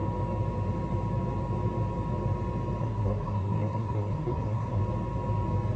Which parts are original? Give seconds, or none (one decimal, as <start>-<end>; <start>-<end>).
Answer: 0.0-2.8; 4.8-5.8